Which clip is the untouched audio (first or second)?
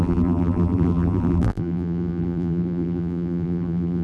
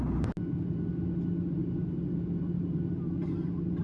second